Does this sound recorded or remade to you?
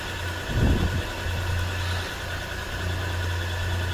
recorded